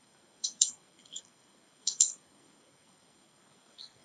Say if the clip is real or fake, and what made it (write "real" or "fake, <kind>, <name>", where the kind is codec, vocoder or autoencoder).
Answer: fake, codec, SNAC